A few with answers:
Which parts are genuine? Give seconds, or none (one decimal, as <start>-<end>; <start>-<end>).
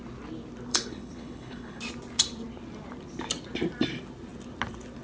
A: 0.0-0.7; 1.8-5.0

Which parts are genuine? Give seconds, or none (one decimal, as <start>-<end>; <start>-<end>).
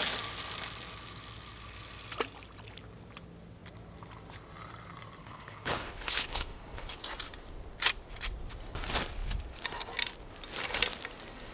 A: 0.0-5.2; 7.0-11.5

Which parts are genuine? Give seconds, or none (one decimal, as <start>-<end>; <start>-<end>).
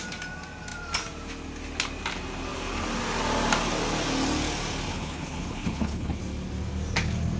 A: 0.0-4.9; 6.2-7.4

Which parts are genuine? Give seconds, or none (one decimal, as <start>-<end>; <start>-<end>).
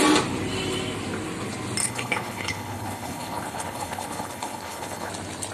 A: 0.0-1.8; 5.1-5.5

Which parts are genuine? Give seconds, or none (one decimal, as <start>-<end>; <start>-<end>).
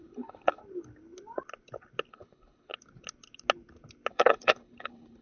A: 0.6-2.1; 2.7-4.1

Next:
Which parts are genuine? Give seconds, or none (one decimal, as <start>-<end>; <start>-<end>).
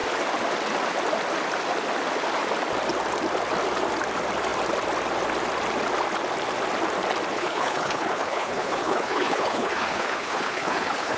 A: 0.0-7.3